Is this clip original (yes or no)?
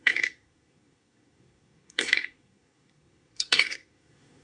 no